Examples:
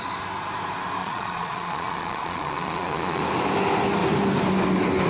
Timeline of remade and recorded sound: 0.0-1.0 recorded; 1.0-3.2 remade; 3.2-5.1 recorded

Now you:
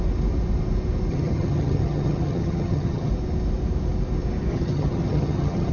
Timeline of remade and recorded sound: 0.0-1.1 recorded; 1.1-3.1 remade; 3.1-4.5 recorded; 4.5-5.7 remade

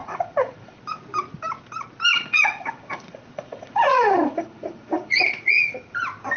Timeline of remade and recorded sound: 0.0-0.8 remade; 0.8-2.1 recorded; 2.1-5.6 remade; 5.6-6.4 recorded

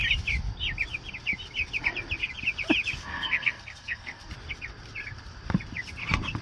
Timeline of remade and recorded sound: 0.0-3.0 recorded; 3.0-4.3 remade; 4.3-6.4 recorded

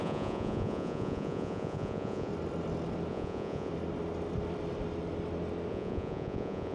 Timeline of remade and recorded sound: 0.0-2.3 remade; 2.3-3.1 recorded; 3.1-3.7 remade; 3.7-5.7 recorded; 5.7-6.7 remade

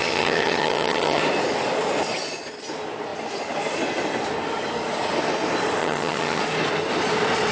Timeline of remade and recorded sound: 0.0-1.2 remade; 1.2-5.8 recorded; 5.8-6.4 remade; 6.4-7.5 recorded

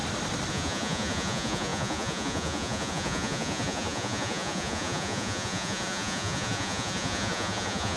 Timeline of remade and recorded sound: 0.0-0.5 recorded; 0.5-8.0 remade

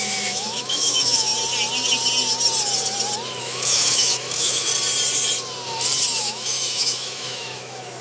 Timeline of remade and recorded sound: 0.0-1.3 remade; 1.3-3.4 recorded; 3.4-4.7 remade; 4.7-6.2 recorded; 6.2-8.0 remade